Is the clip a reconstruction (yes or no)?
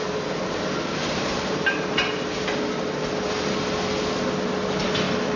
no